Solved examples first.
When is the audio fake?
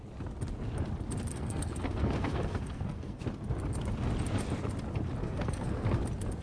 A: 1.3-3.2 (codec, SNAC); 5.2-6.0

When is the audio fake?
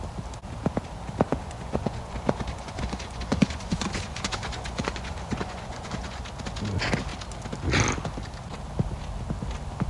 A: 1.3-6.2 (vocoder, Vocos)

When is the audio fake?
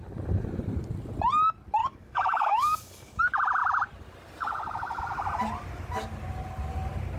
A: 1.8-3.2 (codec, DAC)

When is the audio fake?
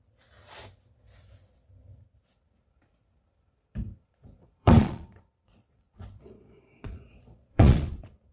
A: 4.0-8.3 (vocoder, Vocos)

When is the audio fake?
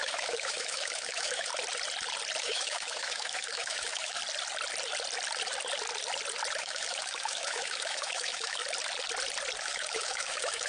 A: 0.0-1.5 (autoencoder, DAC-VAE); 2.4-4.2; 6.6-8.6; 9.6-10.7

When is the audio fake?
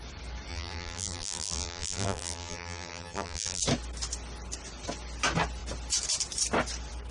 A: 0.5-3.6 (vocoder, BigVGAN v2)